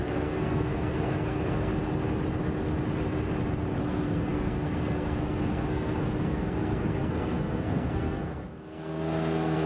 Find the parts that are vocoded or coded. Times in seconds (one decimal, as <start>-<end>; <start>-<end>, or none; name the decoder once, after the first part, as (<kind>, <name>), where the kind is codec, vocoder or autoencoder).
0.0-1.7 (codec, SNAC); 3.8-9.7